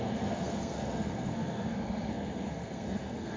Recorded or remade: remade